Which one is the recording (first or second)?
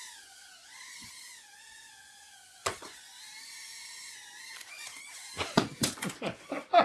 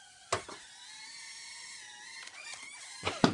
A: second